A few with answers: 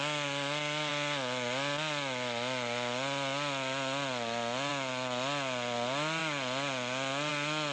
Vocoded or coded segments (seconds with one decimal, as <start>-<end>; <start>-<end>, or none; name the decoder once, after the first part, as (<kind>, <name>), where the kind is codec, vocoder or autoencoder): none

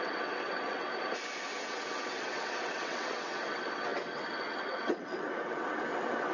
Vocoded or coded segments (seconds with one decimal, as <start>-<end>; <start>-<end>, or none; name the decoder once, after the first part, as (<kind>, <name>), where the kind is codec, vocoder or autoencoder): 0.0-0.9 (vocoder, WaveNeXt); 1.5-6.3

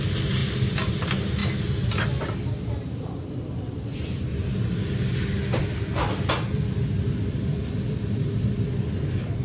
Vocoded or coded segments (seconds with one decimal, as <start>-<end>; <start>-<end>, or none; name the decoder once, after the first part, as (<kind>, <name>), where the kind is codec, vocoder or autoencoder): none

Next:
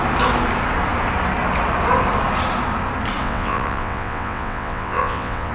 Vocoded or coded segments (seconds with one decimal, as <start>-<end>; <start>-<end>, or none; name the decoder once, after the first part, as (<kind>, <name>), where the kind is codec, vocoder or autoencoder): 3.2-5.5 (vocoder, WaveNeXt)